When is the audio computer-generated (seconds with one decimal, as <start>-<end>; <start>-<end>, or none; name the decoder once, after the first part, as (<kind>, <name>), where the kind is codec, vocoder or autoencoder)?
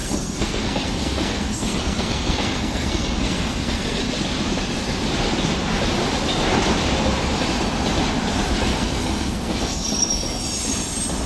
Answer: 0.0-4.0 (codec, SNAC); 8.7-10.1